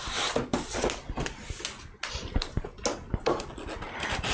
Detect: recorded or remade recorded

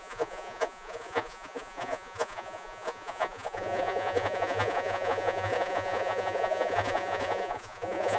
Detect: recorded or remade remade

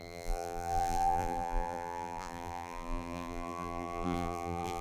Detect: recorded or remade remade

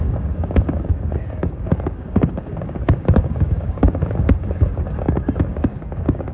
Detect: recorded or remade remade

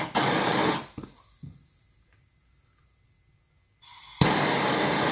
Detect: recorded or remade recorded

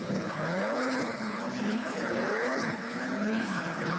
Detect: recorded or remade remade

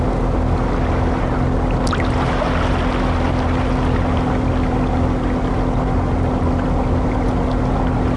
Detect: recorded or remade recorded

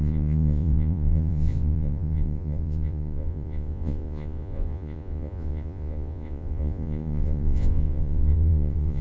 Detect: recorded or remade remade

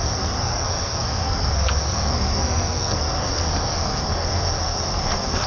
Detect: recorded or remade remade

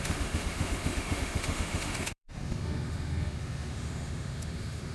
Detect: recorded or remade remade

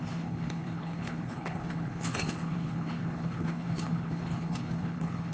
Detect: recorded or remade remade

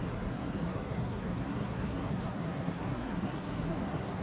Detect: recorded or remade remade